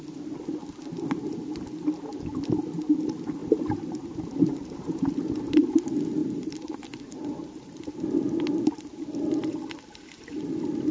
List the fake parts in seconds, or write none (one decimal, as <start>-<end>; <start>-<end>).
3.4-5.1; 6.2-7.8